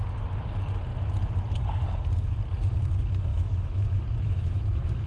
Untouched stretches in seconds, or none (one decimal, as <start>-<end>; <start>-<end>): 0.0-3.3